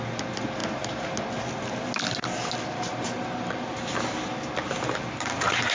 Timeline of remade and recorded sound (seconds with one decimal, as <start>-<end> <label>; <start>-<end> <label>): 0.0-5.7 recorded